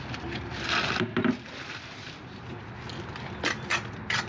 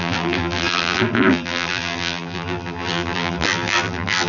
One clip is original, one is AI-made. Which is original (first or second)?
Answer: first